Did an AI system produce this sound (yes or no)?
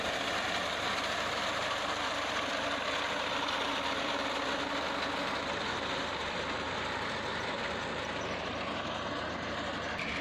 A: no